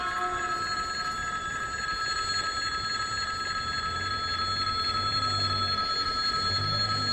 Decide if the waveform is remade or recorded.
recorded